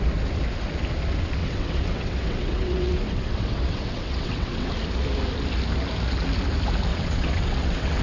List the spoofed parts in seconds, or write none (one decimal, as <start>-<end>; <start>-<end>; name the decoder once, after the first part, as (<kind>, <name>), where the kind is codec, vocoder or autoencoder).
1.4-4.7 (vocoder, WaveNeXt); 6.9-8.0